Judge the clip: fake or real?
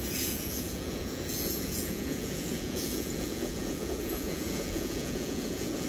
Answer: fake